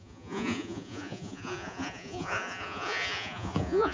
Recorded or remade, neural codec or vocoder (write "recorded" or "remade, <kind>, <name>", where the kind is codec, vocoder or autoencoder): remade, vocoder, Vocos